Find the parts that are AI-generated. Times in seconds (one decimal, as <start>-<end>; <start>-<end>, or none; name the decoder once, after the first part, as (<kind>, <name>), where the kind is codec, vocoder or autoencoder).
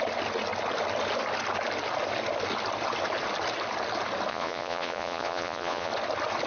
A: 4.3-5.9 (vocoder, Vocos)